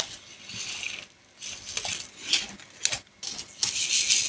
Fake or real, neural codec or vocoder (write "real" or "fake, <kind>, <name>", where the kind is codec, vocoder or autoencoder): real